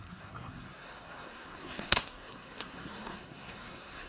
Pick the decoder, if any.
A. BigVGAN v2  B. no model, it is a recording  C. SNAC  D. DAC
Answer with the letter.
C